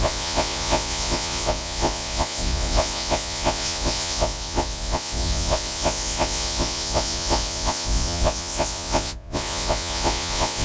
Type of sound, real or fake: fake